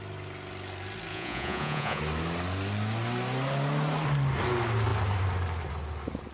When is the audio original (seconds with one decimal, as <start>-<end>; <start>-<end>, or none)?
0.0-1.1; 2.0-6.3